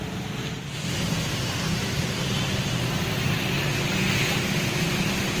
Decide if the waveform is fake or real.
real